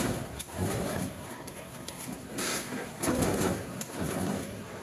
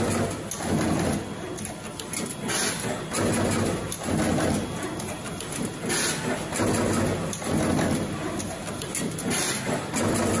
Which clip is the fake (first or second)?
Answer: first